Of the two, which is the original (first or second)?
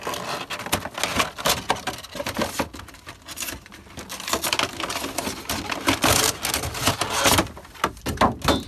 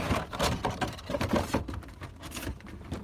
first